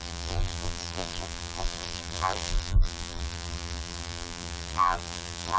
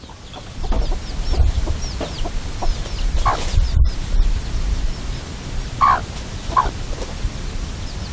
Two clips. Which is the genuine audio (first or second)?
second